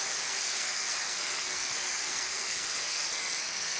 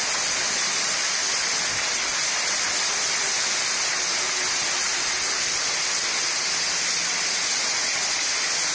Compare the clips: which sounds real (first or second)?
second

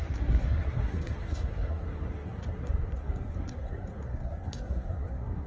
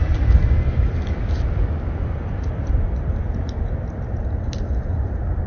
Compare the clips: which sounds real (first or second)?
second